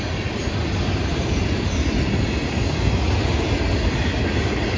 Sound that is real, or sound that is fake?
real